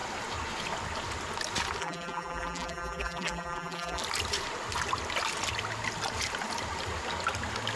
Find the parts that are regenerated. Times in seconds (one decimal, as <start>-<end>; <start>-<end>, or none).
1.8-4.0